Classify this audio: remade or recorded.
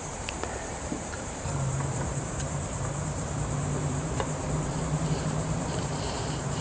remade